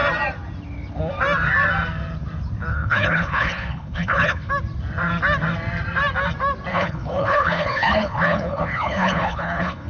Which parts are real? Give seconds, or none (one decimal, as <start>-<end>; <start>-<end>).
0.0-2.7; 4.5-6.7